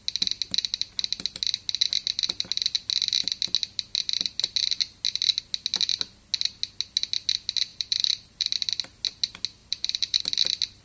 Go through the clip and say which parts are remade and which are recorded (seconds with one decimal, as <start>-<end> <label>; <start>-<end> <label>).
0.0-7.7 recorded; 7.7-8.5 remade; 8.5-9.6 recorded; 9.6-10.2 remade; 10.2-10.8 recorded